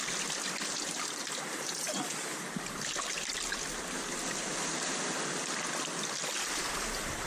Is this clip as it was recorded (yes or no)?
yes